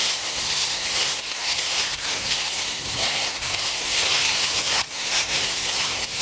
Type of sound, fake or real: fake